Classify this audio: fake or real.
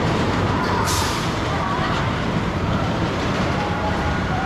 fake